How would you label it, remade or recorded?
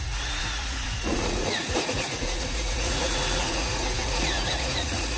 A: remade